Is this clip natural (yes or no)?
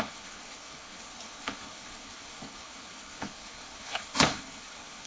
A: no